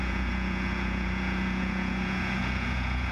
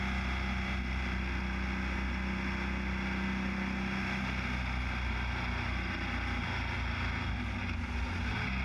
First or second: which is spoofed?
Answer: first